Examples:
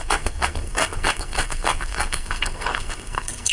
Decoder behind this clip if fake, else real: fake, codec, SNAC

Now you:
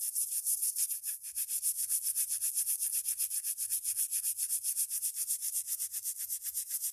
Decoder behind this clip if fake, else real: real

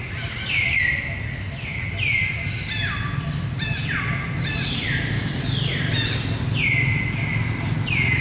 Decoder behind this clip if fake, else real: real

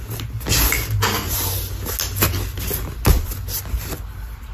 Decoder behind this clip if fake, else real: real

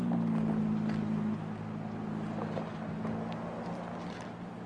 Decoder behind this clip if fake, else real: real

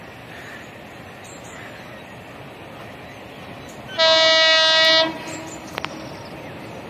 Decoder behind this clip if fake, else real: real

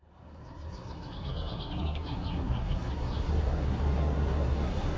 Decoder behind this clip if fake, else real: fake, codec, SNAC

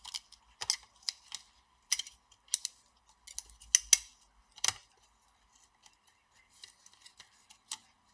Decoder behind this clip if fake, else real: real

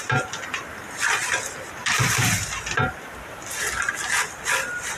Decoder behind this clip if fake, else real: real